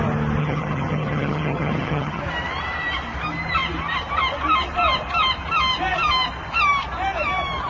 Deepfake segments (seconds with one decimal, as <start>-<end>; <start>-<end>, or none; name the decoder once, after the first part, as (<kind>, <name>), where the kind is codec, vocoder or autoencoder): 0.4-2.2 (vocoder, HiFi-GAN)